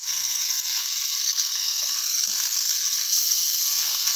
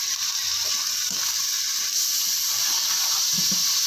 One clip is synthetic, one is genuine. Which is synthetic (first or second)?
first